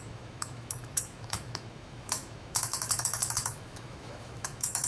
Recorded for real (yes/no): no